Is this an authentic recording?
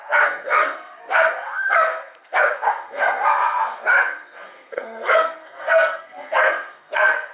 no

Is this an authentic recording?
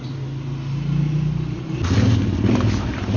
yes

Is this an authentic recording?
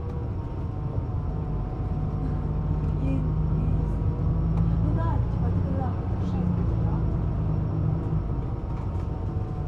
yes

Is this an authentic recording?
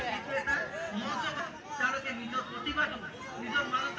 yes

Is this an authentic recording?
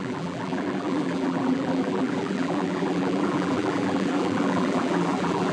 no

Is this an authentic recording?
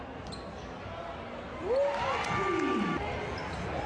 yes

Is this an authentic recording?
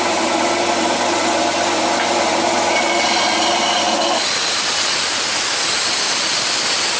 yes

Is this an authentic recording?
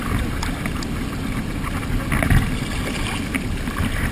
yes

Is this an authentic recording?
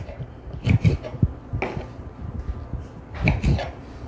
yes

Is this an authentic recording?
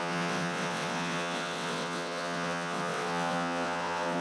no